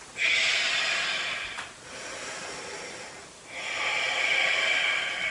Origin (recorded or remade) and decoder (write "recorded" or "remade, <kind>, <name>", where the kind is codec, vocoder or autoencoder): recorded